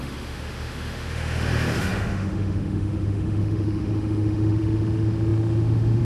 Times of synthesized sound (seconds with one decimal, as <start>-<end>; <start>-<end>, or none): 0.0-6.0

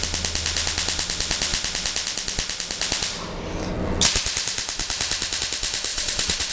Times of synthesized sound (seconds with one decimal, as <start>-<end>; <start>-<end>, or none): 5.9-6.5